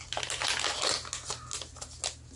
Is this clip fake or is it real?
real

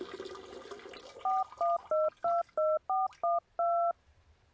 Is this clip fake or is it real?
real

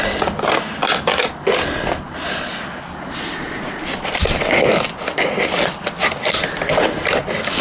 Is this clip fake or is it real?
real